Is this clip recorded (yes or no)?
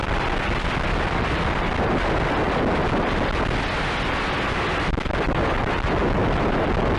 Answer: yes